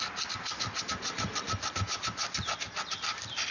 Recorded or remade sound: recorded